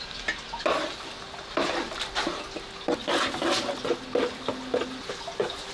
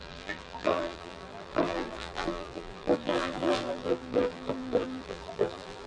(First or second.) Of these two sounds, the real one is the first